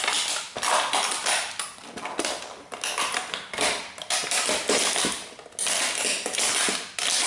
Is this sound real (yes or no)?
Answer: yes